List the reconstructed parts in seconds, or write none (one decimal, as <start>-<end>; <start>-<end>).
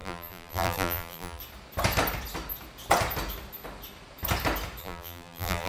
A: 0.0-1.4; 4.8-5.7